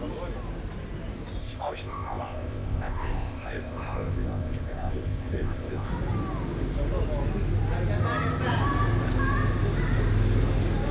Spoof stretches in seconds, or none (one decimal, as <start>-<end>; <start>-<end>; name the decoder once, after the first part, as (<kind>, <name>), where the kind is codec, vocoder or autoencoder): 1.4-5.9 (codec, ZipCodec)